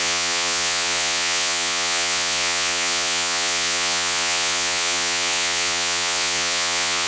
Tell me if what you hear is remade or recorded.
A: remade